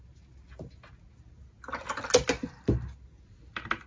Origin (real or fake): real